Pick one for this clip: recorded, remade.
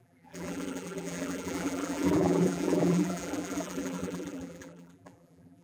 remade